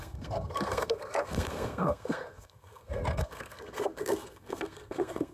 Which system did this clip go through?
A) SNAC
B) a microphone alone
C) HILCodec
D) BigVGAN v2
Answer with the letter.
A